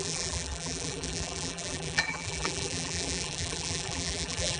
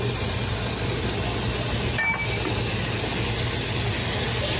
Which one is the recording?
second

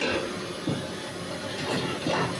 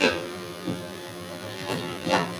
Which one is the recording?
first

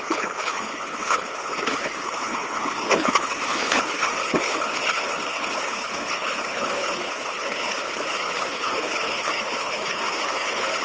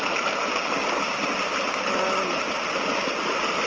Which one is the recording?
second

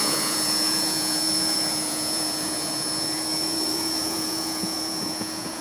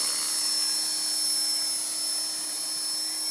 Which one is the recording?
second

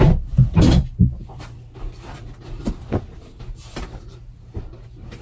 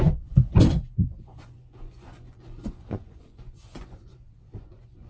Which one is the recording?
first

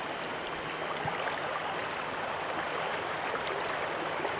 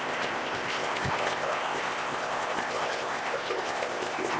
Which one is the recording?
first